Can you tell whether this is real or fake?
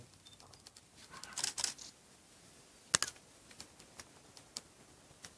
real